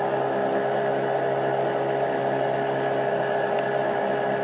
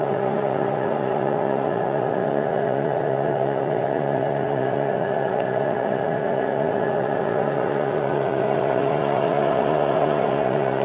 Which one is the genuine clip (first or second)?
first